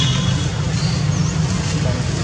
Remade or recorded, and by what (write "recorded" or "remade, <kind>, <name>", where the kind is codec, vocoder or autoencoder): recorded